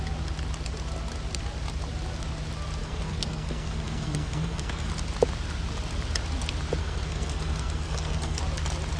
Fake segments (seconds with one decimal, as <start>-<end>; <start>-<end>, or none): 2.8-4.9; 6.8-8.4